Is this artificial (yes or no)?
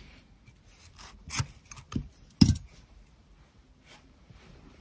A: no